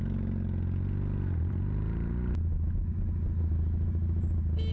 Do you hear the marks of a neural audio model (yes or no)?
no